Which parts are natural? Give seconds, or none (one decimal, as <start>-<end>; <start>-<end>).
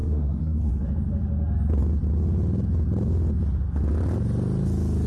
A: 0.7-5.1